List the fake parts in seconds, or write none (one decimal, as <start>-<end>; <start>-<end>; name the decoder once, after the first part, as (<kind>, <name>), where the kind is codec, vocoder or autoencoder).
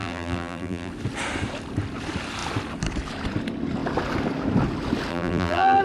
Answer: 0.0-0.9 (vocoder, BigVGAN v2); 5.1-5.8